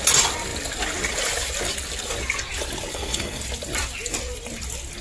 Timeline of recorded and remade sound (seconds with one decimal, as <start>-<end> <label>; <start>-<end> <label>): 0.0-2.9 recorded; 2.9-3.4 remade; 3.4-5.0 recorded